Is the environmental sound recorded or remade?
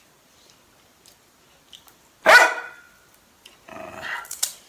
recorded